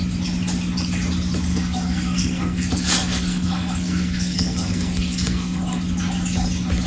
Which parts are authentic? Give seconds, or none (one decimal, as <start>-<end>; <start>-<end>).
0.0-1.5; 5.6-6.9